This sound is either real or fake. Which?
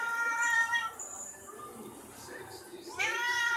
fake